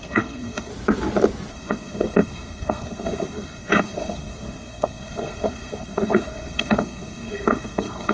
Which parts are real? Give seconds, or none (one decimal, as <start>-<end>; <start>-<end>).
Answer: 0.7-1.5